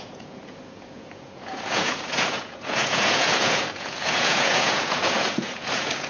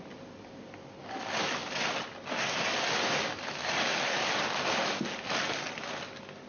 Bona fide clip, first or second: second